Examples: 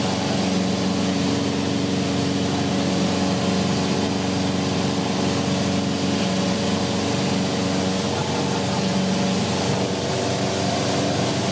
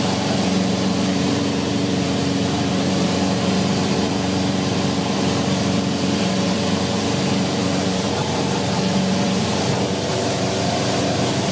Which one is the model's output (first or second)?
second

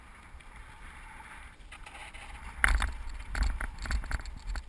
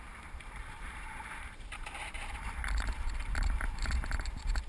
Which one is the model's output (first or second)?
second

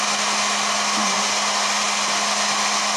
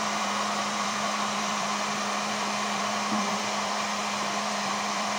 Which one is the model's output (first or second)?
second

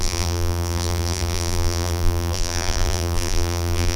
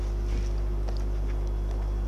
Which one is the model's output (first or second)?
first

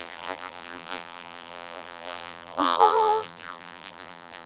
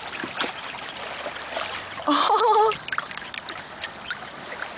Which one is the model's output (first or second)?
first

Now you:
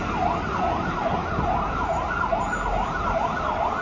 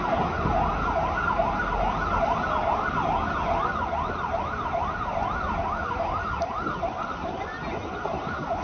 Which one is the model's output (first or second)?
first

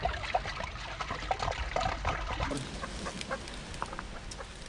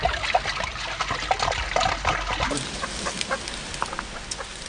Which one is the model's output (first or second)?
first